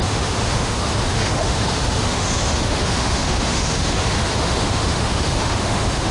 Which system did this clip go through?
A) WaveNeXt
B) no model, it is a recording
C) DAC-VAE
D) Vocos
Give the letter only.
C